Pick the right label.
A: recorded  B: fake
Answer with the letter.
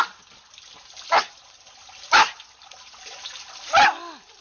A